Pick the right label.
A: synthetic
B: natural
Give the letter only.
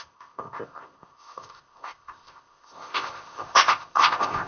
A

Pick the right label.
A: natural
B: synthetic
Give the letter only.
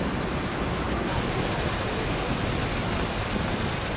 A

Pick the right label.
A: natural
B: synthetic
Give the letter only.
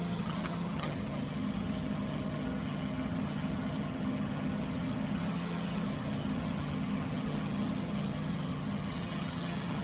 B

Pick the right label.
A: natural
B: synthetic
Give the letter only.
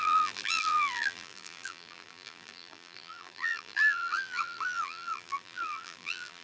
B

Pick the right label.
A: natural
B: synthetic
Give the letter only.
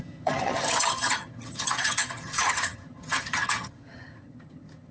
B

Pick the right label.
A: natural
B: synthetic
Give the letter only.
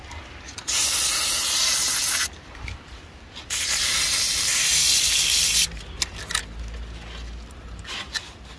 A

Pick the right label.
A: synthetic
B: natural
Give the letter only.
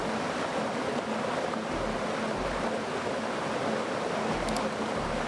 B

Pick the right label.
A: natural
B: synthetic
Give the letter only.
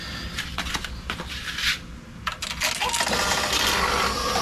A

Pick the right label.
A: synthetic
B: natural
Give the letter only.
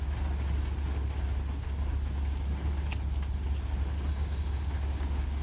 B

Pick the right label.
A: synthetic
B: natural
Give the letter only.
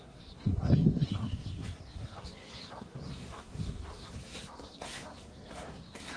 A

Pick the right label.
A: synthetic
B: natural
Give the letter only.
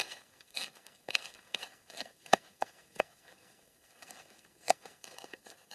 A